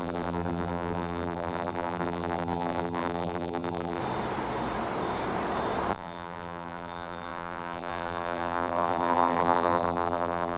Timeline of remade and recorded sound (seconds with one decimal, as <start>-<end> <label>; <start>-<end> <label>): 0.0-4.0 remade; 4.0-5.9 recorded; 5.9-10.6 remade